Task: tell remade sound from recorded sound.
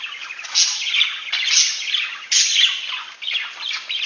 recorded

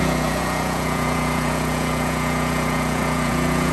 remade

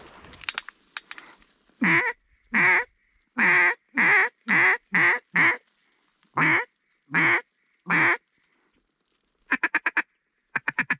recorded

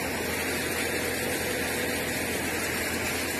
recorded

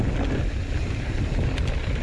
recorded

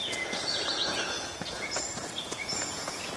remade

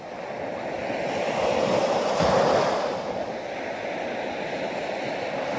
recorded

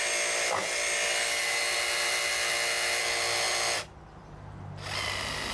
recorded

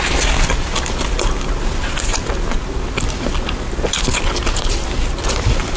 recorded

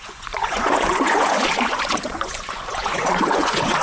remade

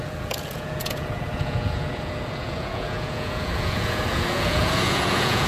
remade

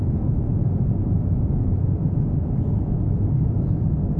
remade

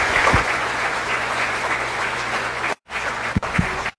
remade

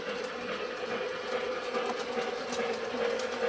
recorded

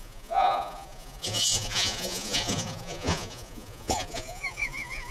remade